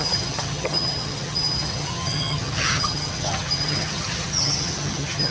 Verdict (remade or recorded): remade